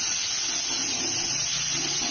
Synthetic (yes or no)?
no